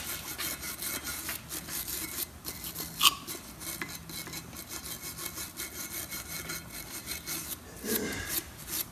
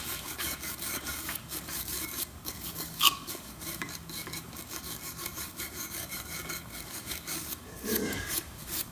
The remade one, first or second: second